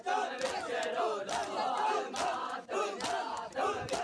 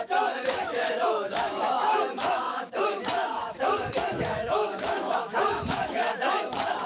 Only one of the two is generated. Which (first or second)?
second